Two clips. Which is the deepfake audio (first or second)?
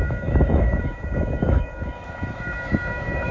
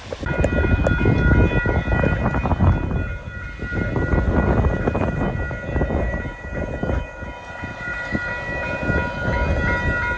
first